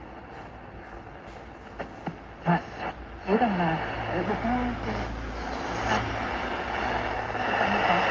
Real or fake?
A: real